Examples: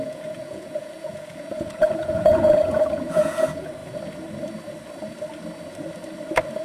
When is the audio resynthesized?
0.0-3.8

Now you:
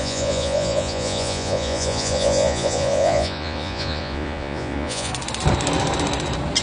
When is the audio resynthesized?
0.0-5.1

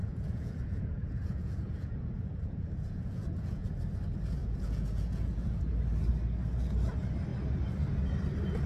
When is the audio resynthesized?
0.0-3.7; 4.4-5.6